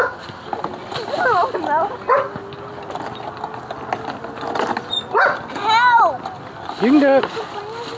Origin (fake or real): real